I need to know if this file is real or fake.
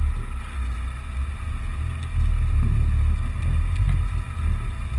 real